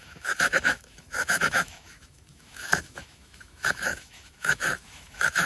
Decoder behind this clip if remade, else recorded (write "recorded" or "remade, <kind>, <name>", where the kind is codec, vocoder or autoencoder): remade, autoencoder, DAC-VAE